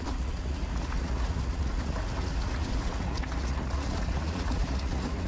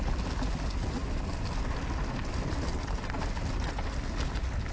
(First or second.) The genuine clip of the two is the second